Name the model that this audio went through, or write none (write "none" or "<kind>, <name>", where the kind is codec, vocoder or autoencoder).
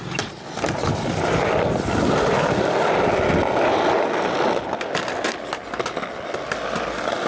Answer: none